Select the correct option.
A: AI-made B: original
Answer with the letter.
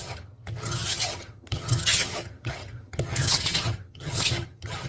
A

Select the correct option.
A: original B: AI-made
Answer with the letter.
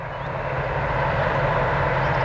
A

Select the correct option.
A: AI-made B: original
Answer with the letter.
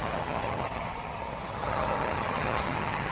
A